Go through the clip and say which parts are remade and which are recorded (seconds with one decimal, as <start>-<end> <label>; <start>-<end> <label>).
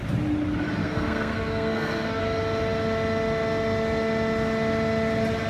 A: 0.0-0.8 recorded; 0.8-2.2 remade; 2.2-5.5 recorded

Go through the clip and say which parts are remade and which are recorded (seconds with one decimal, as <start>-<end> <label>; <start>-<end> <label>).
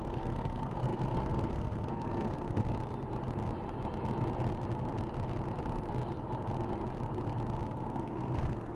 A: 0.0-2.7 remade; 2.7-7.7 recorded; 7.7-8.8 remade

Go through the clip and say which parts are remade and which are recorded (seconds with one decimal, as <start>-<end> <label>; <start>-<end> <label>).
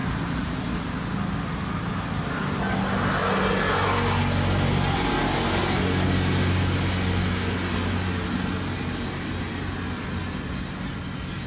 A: 0.0-11.5 recorded